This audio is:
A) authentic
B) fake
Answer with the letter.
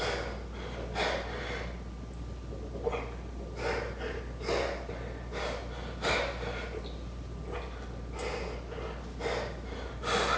A